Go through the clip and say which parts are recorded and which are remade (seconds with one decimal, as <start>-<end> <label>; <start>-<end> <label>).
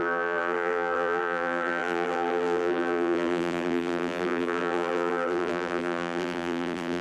0.0-7.0 remade